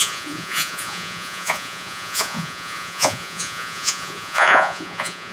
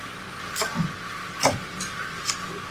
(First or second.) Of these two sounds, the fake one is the first